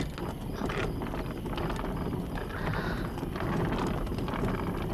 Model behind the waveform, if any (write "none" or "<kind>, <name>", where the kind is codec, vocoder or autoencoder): none